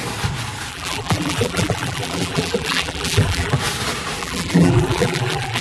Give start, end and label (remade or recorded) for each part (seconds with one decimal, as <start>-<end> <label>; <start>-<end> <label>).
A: 0.0-0.7 recorded; 0.7-3.6 remade; 3.6-4.2 recorded; 4.2-5.6 remade